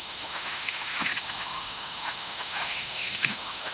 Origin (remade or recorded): remade